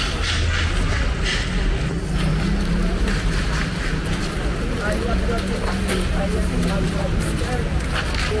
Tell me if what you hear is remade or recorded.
recorded